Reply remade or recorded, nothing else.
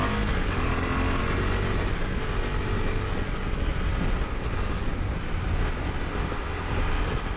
recorded